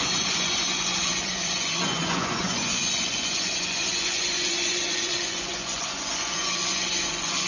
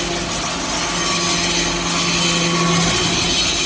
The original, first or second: second